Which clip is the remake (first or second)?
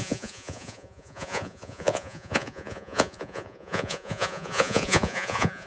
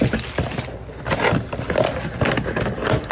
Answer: first